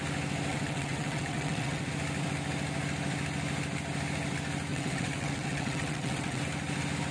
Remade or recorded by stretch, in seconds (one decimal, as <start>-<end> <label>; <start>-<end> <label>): 0.0-0.5 recorded; 0.5-1.9 remade; 1.9-4.7 recorded; 4.7-6.4 remade; 6.4-7.1 recorded